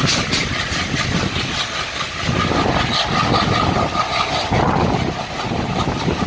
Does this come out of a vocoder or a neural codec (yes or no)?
no